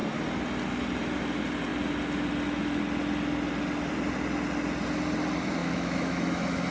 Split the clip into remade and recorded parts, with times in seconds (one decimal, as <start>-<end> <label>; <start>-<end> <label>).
0.0-5.6 recorded; 5.6-6.7 remade